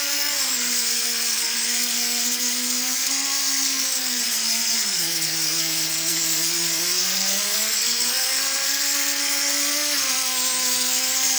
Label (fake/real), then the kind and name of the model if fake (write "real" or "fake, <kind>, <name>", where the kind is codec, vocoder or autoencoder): fake, codec, SNAC